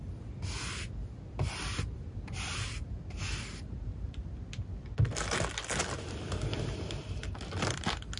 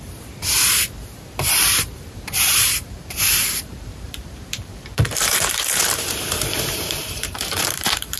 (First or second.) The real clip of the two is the first